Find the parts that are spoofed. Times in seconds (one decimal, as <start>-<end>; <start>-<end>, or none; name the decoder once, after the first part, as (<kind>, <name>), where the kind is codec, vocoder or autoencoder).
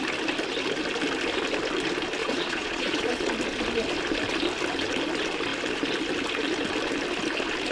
2.2-3.3 (vocoder, Vocos)